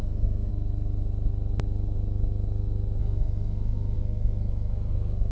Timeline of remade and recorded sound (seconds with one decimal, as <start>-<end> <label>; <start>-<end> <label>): 0.0-0.5 remade; 0.5-3.0 recorded; 3.0-5.3 remade